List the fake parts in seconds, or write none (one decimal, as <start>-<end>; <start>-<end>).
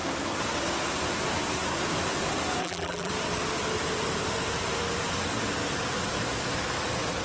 2.6-3.1